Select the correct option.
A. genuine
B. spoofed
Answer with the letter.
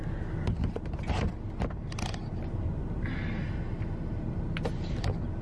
A